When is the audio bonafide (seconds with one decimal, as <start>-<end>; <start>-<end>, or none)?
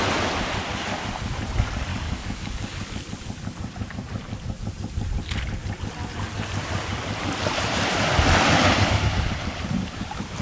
0.0-1.9; 2.9-10.4